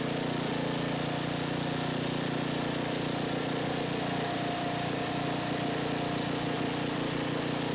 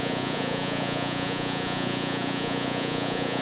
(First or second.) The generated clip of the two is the second